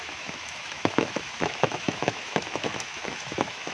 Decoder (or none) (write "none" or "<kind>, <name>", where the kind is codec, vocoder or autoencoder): autoencoder, DAC-VAE